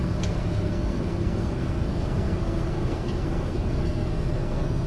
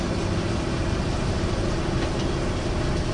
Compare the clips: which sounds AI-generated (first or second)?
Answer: first